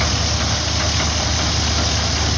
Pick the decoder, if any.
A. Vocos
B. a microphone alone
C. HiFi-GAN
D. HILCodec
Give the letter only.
B